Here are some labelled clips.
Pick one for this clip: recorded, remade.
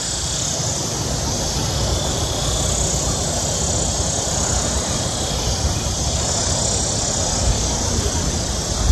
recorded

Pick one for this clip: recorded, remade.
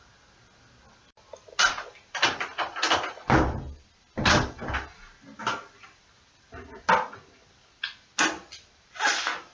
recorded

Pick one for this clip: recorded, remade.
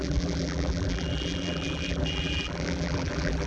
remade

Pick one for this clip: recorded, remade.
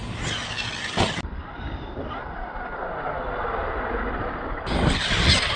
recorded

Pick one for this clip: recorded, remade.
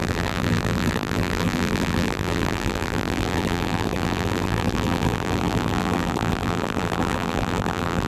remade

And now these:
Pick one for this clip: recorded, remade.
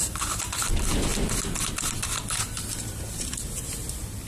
recorded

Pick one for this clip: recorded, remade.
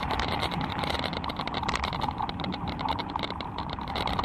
remade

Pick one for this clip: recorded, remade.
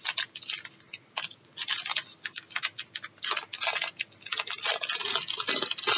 recorded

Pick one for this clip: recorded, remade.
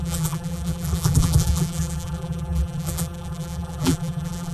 remade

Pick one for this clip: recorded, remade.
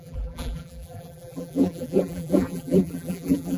remade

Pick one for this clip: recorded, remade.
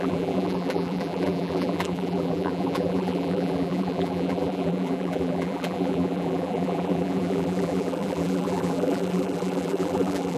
remade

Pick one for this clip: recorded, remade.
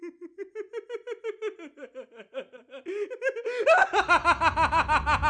recorded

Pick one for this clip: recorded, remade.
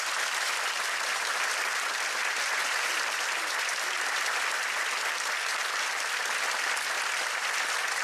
recorded